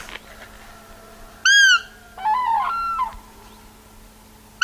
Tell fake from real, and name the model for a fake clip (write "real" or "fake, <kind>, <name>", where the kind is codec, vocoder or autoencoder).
real